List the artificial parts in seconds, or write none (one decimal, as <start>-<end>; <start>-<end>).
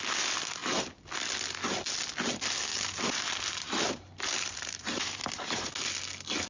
2.7-5.7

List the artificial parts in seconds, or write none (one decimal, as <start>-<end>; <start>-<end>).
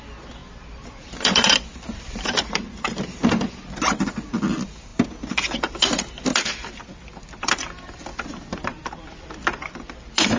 0.0-4.9; 5.6-10.4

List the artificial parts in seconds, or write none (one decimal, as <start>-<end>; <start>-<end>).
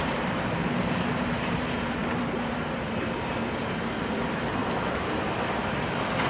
0.0-4.6